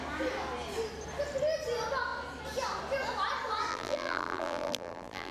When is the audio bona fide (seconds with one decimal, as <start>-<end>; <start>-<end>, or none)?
0.0-3.7